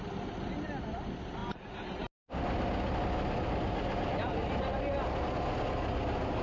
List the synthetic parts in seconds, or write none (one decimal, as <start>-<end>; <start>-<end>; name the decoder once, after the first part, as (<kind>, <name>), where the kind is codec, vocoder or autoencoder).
none